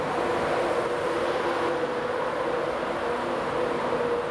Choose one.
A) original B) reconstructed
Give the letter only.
A